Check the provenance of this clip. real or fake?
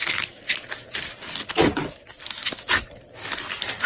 real